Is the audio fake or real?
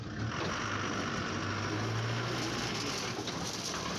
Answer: real